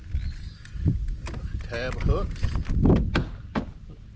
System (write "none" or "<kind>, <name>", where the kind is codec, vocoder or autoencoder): none